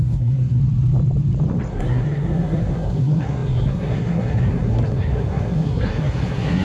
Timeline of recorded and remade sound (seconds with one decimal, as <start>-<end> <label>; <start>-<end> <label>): 0.0-0.6 remade; 0.6-1.7 recorded; 1.7-6.6 remade